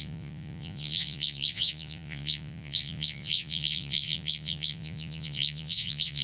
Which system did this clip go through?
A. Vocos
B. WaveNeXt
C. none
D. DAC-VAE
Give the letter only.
A